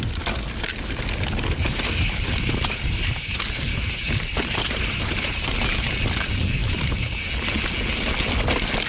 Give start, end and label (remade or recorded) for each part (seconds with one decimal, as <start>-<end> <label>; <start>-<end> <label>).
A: 0.0-1.6 recorded; 1.6-5.7 remade; 5.7-6.6 recorded; 6.6-7.3 remade; 7.3-8.9 recorded